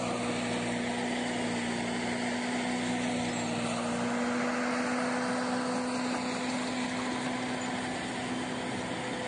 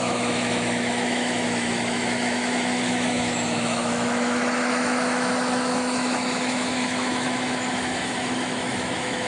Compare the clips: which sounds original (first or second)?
first